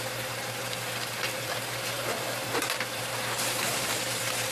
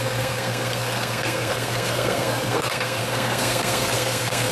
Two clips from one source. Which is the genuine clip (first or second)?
first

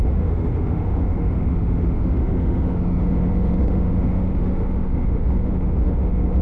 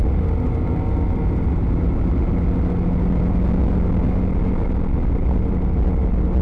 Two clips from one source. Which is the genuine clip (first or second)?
second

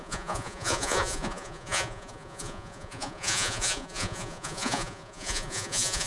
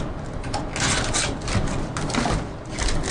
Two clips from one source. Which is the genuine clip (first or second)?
second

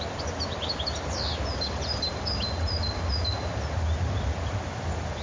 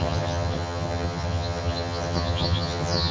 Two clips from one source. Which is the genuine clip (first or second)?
first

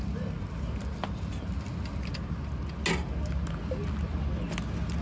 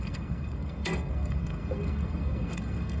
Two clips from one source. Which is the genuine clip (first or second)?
first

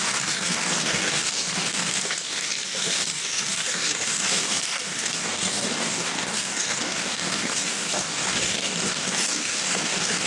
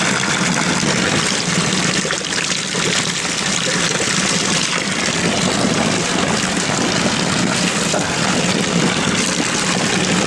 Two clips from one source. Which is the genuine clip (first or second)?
second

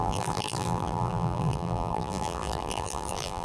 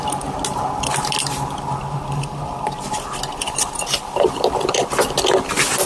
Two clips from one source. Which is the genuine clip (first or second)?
second